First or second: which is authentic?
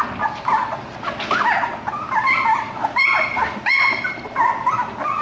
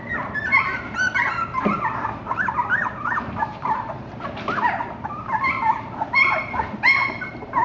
first